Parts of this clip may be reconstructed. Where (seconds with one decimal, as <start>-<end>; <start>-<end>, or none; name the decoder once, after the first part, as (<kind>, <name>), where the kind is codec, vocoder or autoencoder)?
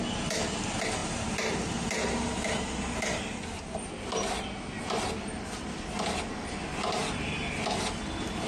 none